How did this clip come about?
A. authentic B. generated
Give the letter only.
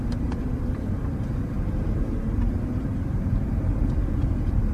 B